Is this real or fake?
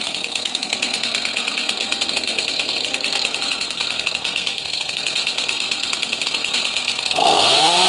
fake